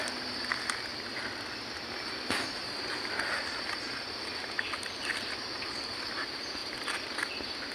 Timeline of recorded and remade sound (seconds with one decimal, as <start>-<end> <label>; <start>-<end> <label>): 0.0-7.7 recorded